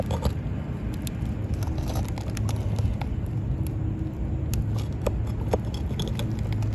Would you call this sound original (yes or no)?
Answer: yes